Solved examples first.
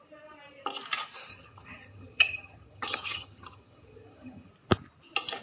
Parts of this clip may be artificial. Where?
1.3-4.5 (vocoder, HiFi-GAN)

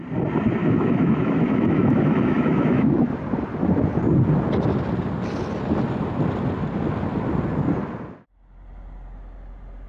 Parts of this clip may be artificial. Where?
0.6-3.1 (autoencoder, DAC-VAE)

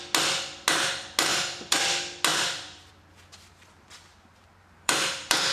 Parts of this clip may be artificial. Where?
1.3-1.8 (vocoder, BigVGAN v2); 2.3-2.9; 4.1-5.5

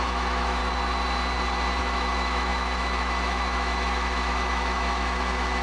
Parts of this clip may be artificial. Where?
0.0-0.6 (autoencoder, DAC-VAE); 1.8-5.6